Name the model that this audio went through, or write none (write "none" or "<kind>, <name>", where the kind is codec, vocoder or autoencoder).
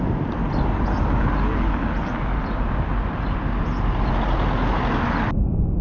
none